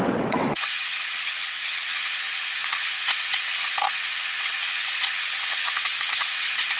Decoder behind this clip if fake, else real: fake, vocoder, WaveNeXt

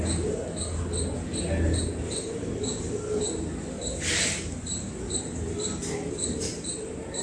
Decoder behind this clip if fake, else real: real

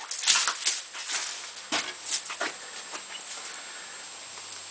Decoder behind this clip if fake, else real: real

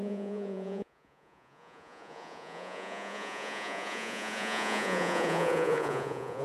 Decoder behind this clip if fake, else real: fake, vocoder, Vocos